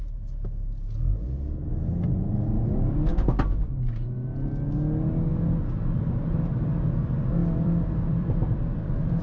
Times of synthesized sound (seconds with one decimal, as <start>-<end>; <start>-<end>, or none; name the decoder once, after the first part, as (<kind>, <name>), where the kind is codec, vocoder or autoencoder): 7.4-9.2 (vocoder, BigVGAN v2)